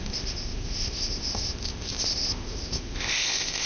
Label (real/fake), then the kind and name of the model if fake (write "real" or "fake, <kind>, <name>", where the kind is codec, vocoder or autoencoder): fake, codec, ZipCodec